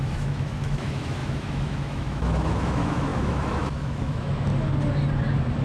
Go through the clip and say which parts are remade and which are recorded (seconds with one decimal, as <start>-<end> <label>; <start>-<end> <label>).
0.0-4.5 remade; 4.5-5.6 recorded